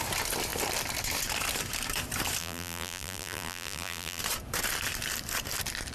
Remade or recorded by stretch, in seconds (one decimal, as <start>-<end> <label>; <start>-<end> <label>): 0.0-2.4 recorded; 2.4-4.2 remade; 4.2-5.9 recorded